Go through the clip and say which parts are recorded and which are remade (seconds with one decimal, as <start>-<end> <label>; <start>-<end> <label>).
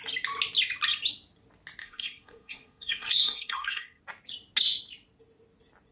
0.0-1.8 recorded; 1.8-4.0 remade; 4.0-5.9 recorded